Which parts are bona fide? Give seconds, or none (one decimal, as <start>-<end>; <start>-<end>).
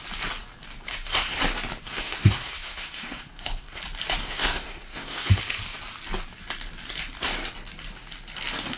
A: 0.0-0.9; 1.4-1.8; 3.8-4.2; 5.4-8.8